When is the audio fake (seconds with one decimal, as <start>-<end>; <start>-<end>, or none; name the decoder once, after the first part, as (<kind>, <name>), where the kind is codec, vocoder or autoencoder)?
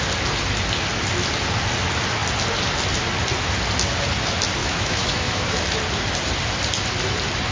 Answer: 4.6-5.8 (autoencoder, DAC-VAE)